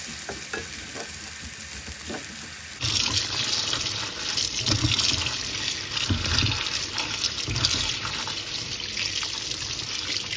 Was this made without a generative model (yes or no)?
yes